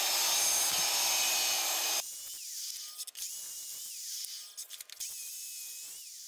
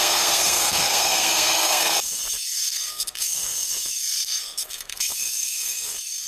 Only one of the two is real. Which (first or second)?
first